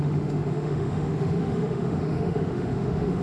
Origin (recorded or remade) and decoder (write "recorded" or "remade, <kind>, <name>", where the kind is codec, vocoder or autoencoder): remade, autoencoder, DAC-VAE